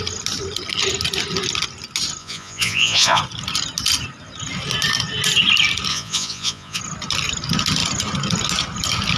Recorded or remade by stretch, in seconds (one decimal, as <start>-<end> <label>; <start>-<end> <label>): 0.0-2.2 recorded; 2.2-3.2 remade; 3.2-5.9 recorded; 5.9-6.8 remade; 6.8-9.2 recorded